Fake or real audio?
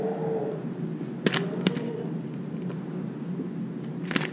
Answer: real